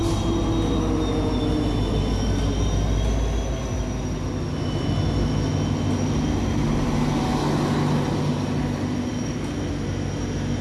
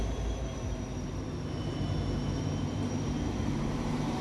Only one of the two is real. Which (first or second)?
first